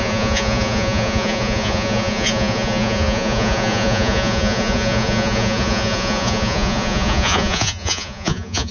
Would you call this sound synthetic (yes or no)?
yes